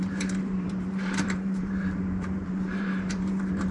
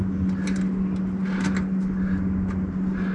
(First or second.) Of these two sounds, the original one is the second